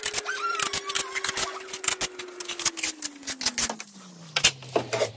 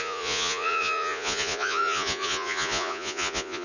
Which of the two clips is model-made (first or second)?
second